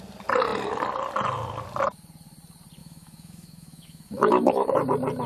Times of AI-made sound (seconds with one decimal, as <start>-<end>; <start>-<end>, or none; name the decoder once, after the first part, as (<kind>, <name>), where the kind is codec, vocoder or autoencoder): 2.8-4.7 (autoencoder, DAC-VAE)